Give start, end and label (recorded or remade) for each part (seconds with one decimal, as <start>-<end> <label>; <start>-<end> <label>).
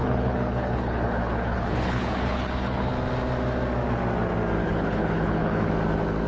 0.0-2.9 remade; 2.9-4.6 recorded; 4.6-5.7 remade; 5.7-6.3 recorded